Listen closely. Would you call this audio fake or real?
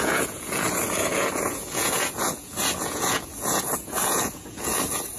fake